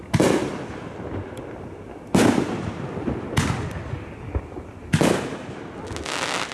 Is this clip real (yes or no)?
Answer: yes